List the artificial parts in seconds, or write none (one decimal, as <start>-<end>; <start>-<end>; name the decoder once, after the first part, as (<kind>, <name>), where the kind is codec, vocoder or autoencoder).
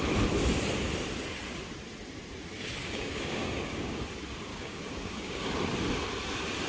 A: 2.8-4.0 (codec, DAC); 4.5-5.5